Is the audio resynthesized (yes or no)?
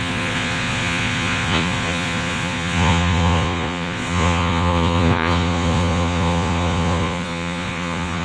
yes